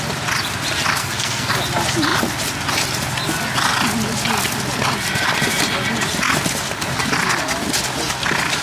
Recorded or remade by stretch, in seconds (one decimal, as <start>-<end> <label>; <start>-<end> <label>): 0.0-1.0 recorded; 1.0-1.5 remade; 1.5-8.6 recorded